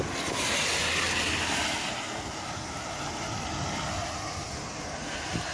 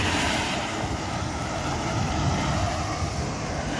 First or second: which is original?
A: first